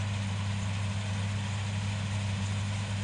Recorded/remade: recorded